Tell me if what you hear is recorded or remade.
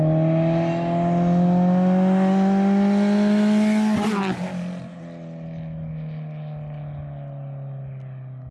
recorded